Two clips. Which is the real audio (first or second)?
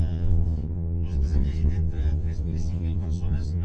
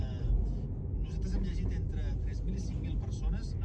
second